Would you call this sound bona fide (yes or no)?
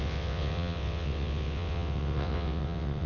no